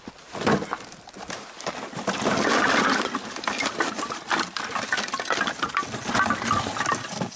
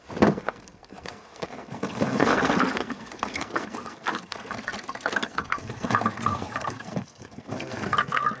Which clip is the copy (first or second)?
second